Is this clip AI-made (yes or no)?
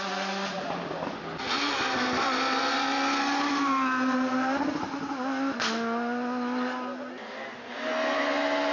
no